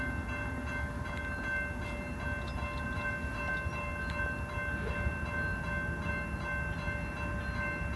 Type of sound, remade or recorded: recorded